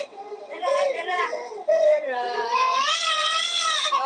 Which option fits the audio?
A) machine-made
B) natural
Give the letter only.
A